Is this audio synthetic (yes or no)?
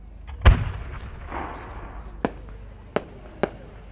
no